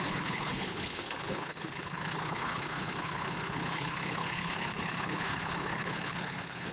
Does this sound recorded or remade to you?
remade